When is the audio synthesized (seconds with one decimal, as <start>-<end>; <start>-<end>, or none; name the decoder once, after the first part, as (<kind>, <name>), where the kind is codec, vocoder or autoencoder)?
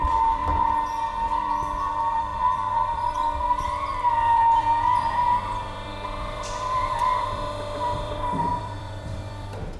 0.0-0.4 (vocoder, BigVGAN v2); 1.4-9.8